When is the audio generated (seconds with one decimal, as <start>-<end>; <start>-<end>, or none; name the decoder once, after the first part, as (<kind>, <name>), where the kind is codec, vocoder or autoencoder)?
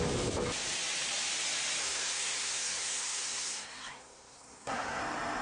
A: 1.8-5.0 (codec, SNAC)